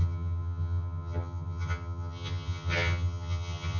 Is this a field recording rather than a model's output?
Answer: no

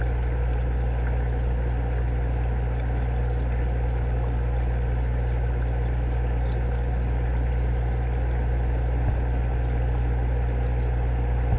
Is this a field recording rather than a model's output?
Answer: yes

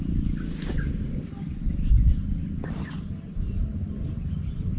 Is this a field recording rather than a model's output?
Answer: yes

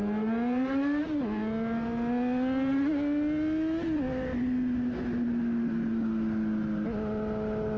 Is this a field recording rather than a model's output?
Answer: yes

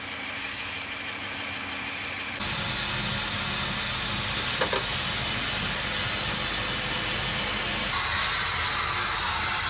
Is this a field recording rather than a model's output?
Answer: yes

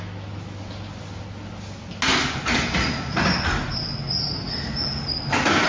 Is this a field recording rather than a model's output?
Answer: yes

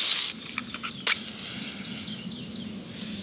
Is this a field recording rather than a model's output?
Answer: yes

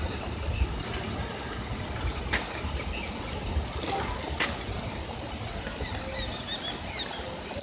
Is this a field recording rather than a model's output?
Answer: yes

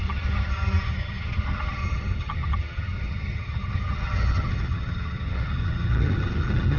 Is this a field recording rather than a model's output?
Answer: no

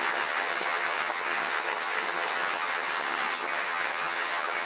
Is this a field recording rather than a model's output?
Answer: no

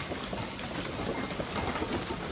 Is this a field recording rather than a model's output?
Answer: yes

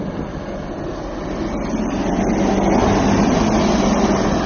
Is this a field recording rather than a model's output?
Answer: yes